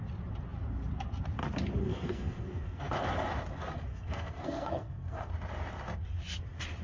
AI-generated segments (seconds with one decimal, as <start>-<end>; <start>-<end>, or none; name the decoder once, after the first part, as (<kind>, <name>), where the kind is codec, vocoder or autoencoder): 1.8-2.9 (codec, SNAC); 3.9-5.3